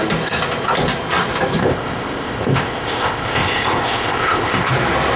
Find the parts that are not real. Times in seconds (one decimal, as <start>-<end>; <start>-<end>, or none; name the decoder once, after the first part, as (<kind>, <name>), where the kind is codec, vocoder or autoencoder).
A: 1.6-4.7 (codec, ZipCodec)